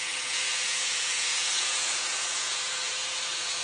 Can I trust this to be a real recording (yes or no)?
no